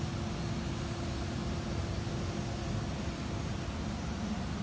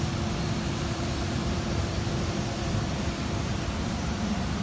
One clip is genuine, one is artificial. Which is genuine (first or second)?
first